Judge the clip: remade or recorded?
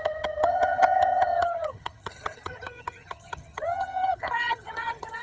remade